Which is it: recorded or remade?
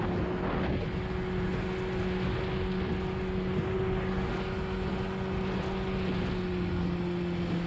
recorded